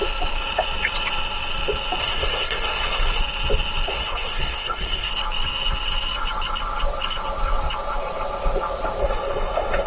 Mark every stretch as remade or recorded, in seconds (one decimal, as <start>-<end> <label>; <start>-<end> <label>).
0.0-2.0 recorded; 2.0-3.2 remade; 3.2-3.9 recorded; 3.9-5.1 remade; 5.1-9.0 recorded; 9.0-9.9 remade